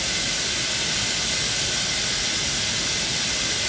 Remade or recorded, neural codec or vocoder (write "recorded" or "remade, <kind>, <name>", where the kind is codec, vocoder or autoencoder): recorded